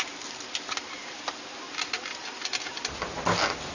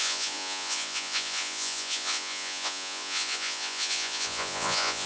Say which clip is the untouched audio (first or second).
first